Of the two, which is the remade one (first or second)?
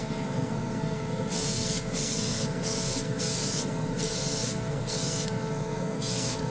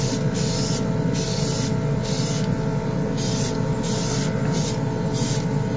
first